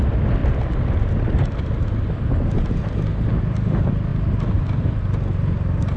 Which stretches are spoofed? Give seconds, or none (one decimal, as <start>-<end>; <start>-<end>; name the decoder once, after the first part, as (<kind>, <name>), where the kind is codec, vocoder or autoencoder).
4.1-4.8 (vocoder, BigVGAN v2)